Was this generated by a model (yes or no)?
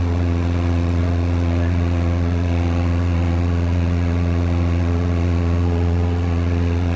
yes